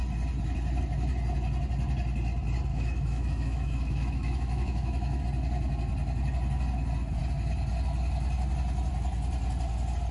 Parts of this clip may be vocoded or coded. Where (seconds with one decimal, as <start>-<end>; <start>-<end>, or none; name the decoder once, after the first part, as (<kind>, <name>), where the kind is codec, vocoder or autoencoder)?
2.7-5.2 (autoencoder, DAC-VAE)